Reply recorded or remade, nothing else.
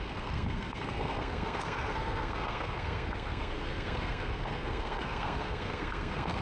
remade